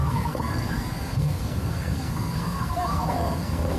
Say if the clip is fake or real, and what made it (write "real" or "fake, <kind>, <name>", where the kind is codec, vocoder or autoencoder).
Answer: fake, codec, SNAC